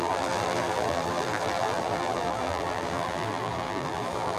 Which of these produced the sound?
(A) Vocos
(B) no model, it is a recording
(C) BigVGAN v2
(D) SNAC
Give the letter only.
C